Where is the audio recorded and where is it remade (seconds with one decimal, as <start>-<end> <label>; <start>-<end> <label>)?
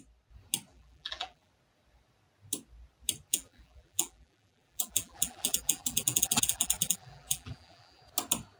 0.0-0.7 recorded; 0.7-1.5 remade; 1.5-3.3 recorded; 3.3-8.0 remade; 8.0-8.6 recorded